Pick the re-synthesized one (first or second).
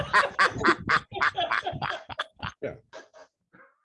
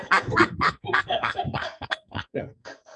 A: second